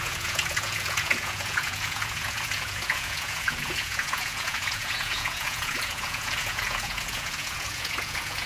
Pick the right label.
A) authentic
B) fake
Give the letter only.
B